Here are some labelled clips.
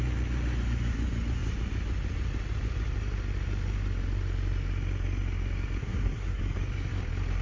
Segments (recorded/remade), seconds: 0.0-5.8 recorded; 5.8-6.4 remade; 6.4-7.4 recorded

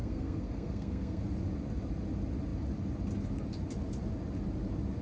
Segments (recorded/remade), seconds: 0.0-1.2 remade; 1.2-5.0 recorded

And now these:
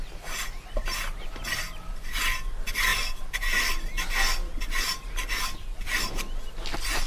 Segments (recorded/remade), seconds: 0.0-7.1 recorded

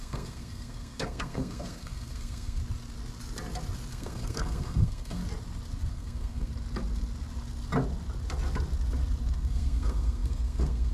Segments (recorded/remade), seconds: 0.0-2.6 remade; 2.6-3.9 recorded; 3.9-5.2 remade; 5.2-5.9 recorded; 5.9-6.5 remade; 6.5-9.3 recorded; 9.3-10.9 remade

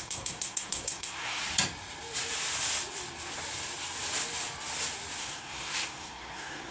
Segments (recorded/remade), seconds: 0.0-1.4 remade; 1.4-5.2 recorded; 5.2-6.7 remade

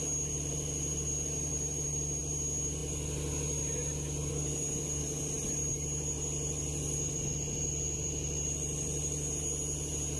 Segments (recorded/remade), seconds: 0.0-10.2 recorded